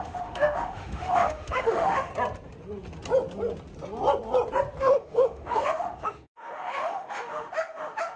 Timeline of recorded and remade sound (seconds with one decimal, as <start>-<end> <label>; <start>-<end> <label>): 0.0-2.1 remade; 2.1-4.8 recorded; 4.8-8.2 remade

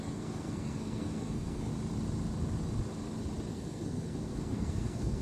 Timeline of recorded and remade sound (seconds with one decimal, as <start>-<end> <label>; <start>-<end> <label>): 0.0-1.7 remade; 1.7-3.5 recorded; 3.5-5.2 remade

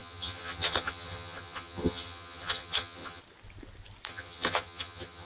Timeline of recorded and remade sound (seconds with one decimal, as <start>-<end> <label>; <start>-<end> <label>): 0.0-3.2 remade; 3.2-4.1 recorded; 4.1-5.3 remade

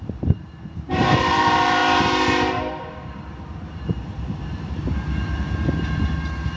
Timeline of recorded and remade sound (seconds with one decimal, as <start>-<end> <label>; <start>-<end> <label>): 0.0-6.6 remade

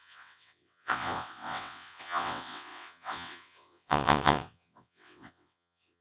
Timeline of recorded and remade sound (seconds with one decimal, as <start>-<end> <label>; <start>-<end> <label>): 0.0-6.0 remade